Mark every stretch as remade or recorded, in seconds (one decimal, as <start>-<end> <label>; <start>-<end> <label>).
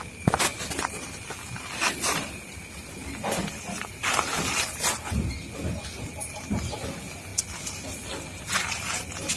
0.0-9.4 recorded